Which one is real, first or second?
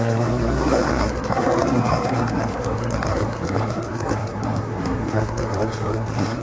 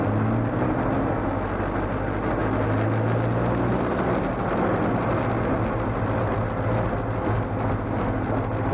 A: second